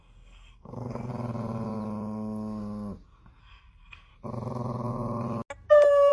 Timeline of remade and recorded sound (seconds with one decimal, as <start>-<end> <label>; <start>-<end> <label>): 0.0-1.1 remade; 1.1-3.4 recorded; 3.4-4.1 remade; 4.1-6.1 recorded